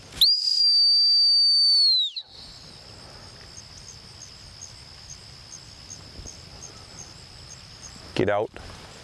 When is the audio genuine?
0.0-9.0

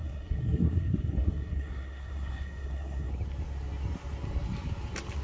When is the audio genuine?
3.1-5.2

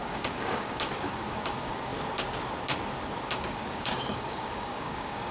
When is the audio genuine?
1.9-3.4